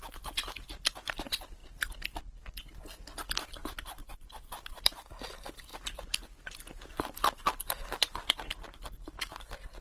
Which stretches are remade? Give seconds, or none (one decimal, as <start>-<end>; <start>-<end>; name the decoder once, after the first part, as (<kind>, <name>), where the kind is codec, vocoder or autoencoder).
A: 4.0-4.8 (vocoder, BigVGAN v2)